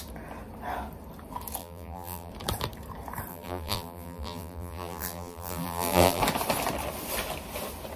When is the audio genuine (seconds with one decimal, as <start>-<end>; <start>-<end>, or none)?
0.0-1.6; 2.3-3.3; 6.2-8.0